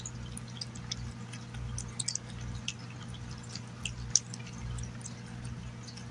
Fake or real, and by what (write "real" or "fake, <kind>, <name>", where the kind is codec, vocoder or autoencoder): real